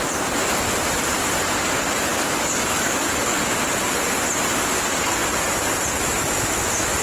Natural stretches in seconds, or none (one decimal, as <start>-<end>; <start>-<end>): 0.0-2.1; 3.6-7.0

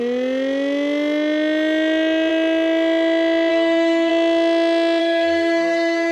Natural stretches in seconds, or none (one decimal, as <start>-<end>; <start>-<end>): 0.0-3.5; 4.1-5.0

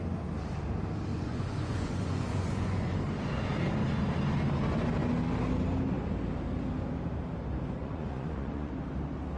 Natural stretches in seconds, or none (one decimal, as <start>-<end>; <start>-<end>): 0.0-1.1; 2.9-7.8; 8.7-9.4

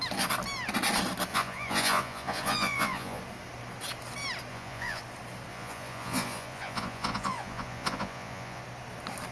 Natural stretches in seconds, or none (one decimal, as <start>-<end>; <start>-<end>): 0.0-1.3; 3.2-4.5; 5.0-5.5; 8.6-9.3